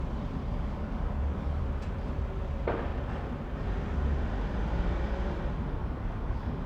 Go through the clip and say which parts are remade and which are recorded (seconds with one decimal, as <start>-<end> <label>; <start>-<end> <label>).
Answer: 0.0-0.5 recorded; 0.5-1.6 remade; 1.6-5.8 recorded; 5.8-6.7 remade